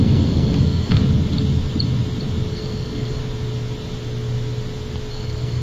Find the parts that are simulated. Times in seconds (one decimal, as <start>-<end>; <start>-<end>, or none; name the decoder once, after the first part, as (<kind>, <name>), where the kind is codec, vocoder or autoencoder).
0.0-1.0 (codec, SNAC); 2.5-3.2; 5.1-5.6